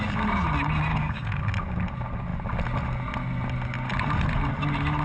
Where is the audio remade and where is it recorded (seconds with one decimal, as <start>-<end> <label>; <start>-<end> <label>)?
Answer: 0.0-0.9 recorded; 0.9-1.4 remade; 1.4-5.0 recorded